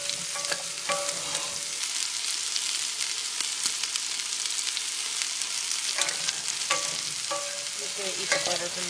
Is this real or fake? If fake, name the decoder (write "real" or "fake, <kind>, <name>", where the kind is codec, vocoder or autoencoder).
real